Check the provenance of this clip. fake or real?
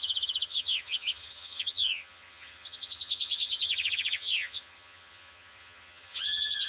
fake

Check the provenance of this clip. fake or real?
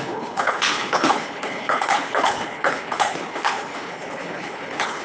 fake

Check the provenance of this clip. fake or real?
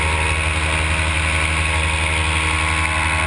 real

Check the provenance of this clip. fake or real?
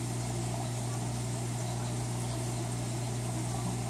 real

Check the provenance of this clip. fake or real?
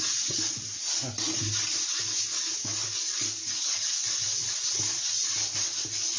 real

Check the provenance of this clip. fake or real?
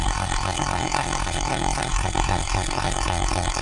fake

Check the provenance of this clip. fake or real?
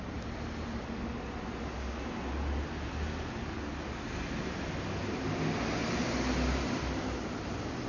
real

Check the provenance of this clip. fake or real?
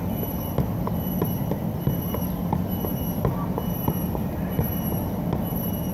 real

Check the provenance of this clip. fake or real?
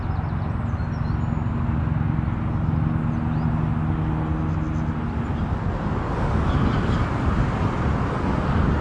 real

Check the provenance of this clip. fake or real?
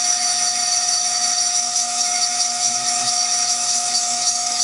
fake